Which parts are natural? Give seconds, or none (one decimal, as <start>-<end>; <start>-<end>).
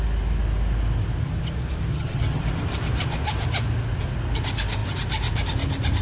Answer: 0.0-1.9; 2.4-6.0